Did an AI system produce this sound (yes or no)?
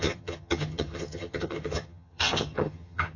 yes